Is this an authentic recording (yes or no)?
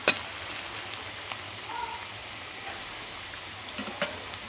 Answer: yes